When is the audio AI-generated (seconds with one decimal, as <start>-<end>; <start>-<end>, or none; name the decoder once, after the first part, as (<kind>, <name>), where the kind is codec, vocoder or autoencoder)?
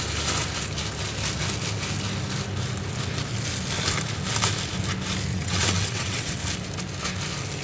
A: 5.3-6.4 (vocoder, WaveNeXt)